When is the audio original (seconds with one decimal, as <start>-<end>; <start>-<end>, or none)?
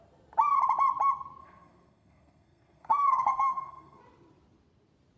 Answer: 0.0-1.4; 4.0-5.2